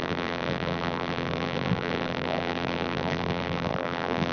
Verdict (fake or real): fake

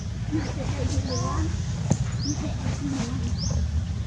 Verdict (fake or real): real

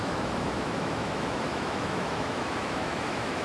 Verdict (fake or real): fake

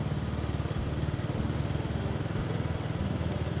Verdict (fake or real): real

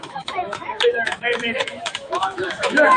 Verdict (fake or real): fake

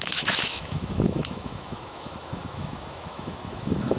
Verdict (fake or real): fake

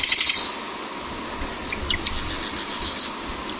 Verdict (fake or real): real